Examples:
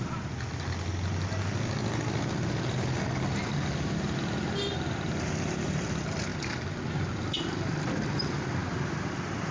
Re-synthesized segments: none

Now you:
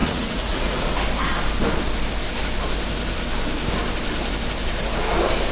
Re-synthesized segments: 0.0-0.9 (vocoder, Vocos)

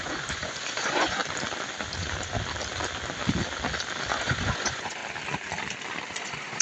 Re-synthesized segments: 0.0-1.2 (vocoder, Vocos); 4.1-5.0; 6.1-6.6

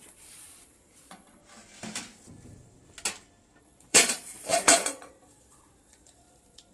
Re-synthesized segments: 0.0-1.4 (vocoder, Vocos); 3.6-6.7